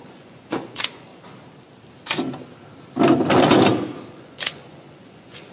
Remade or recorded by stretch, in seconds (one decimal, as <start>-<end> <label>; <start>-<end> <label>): 0.0-1.1 remade; 1.1-4.1 recorded; 4.1-5.5 remade